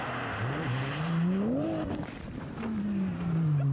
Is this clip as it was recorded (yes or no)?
no